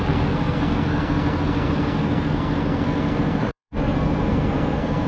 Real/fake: fake